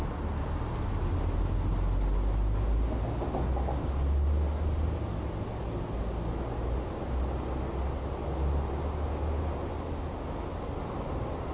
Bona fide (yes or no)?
yes